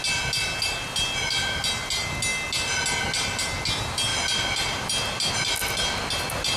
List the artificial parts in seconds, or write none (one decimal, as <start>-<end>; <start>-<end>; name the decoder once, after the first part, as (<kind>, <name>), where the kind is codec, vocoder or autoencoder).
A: 4.1-5.3 (vocoder, BigVGAN v2)

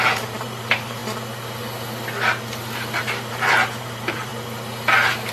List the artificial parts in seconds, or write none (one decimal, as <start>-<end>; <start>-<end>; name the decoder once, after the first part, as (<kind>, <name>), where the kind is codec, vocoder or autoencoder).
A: 0.0-1.0 (vocoder, BigVGAN v2); 3.3-4.3

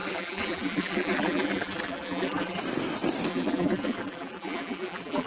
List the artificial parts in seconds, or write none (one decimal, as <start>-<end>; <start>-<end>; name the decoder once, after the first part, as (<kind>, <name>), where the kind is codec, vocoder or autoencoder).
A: 0.0-2.6 (vocoder, BigVGAN v2); 3.3-5.3

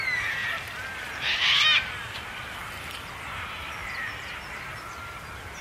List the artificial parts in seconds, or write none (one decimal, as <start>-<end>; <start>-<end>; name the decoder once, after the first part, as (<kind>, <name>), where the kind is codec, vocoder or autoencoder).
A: 0.4-3.1 (vocoder, BigVGAN v2); 3.8-4.5

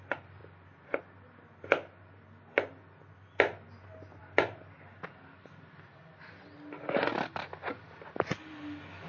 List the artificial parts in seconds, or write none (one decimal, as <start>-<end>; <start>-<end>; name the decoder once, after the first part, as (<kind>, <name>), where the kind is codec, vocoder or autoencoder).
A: none